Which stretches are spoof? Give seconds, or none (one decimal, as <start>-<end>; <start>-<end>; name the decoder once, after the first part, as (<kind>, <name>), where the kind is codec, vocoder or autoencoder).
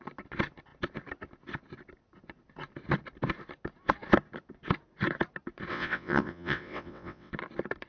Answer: 5.7-7.3 (vocoder, WaveNeXt)